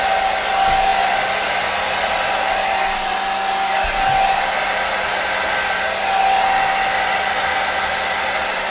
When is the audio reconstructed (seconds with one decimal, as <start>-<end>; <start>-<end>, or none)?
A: none